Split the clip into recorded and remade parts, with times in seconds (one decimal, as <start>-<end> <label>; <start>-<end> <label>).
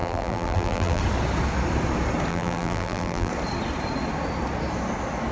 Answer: 0.0-1.0 remade; 1.0-2.3 recorded; 2.3-3.3 remade; 3.3-5.3 recorded